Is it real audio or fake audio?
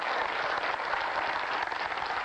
real